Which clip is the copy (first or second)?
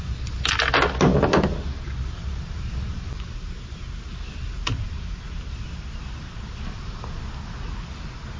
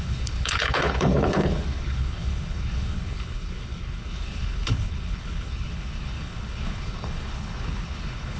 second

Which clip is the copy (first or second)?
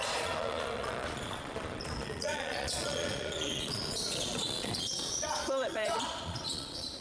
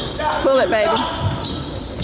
first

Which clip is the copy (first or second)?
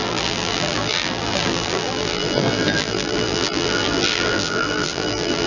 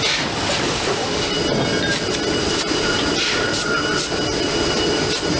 first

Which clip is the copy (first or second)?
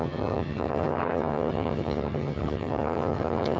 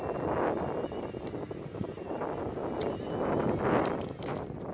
first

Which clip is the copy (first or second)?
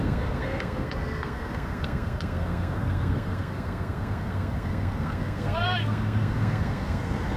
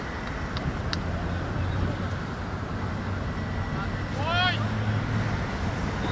first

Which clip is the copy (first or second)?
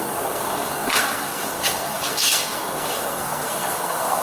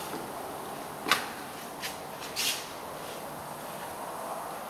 first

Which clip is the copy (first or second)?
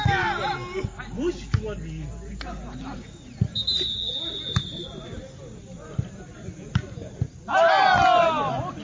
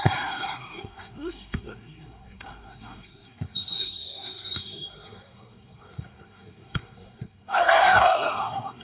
second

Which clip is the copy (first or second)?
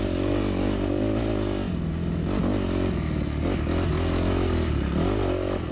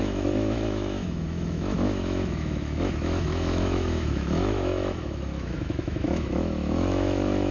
second